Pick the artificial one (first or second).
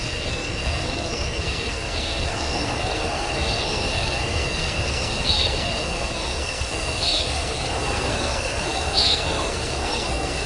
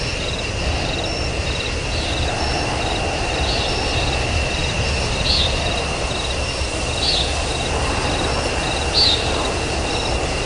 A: first